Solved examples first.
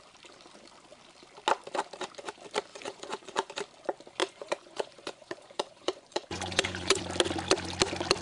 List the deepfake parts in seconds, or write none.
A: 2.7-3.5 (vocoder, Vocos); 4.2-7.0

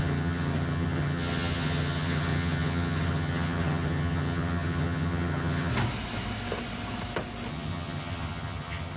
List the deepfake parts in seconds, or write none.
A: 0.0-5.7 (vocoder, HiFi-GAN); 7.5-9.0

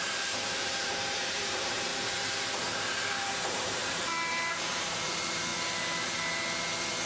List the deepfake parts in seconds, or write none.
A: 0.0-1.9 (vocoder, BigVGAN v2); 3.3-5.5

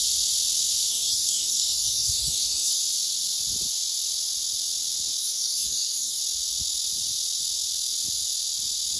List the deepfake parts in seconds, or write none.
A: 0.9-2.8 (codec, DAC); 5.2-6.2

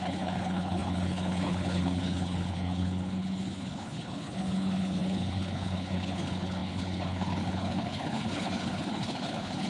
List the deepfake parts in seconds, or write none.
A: 0.0-9.7 (codec, HILCodec)

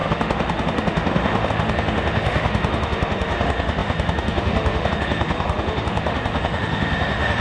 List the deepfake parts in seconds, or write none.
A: 0.0-7.4 (autoencoder, DAC-VAE)